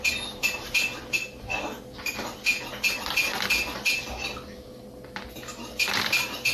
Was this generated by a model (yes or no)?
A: no